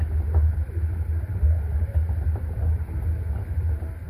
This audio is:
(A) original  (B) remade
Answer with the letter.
A